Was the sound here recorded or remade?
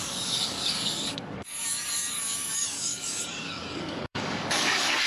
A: remade